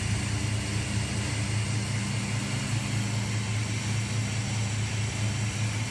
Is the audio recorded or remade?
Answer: recorded